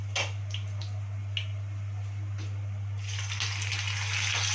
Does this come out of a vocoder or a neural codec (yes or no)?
no